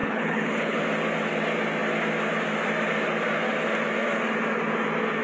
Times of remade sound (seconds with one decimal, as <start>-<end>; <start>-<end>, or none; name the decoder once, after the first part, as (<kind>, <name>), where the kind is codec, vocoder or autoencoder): 0.0-0.8 (codec, HILCodec)